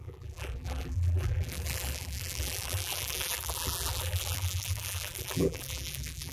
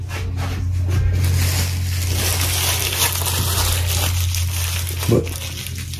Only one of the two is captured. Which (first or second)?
second